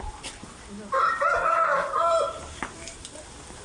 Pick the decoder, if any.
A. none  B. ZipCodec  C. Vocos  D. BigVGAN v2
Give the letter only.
A